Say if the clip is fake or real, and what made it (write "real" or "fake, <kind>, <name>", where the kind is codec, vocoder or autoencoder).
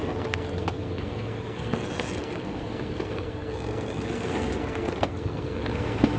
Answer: fake, codec, SNAC